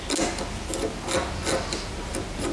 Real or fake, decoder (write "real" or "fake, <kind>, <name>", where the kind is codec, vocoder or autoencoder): real